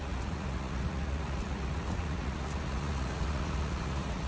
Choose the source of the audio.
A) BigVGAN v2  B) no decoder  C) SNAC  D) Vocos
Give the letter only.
D